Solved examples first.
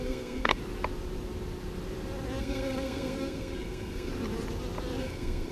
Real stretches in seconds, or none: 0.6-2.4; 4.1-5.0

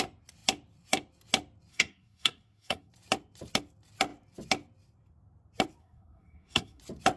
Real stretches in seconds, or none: 0.0-1.7; 2.9-5.8; 6.8-7.2

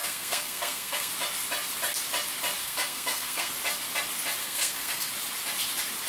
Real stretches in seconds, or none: 1.1-2.6; 3.5-4.4; 5.1-6.1

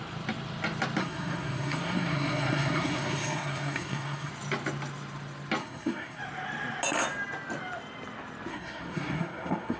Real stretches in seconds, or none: 0.0-1.0; 4.3-5.6; 6.2-8.5

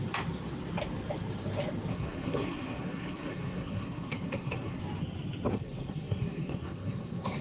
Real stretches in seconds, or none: 0.0-1.9; 4.8-5.5

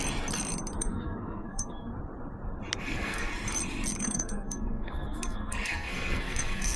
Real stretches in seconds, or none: 0.0-0.8; 1.9-2.8; 3.3-4.0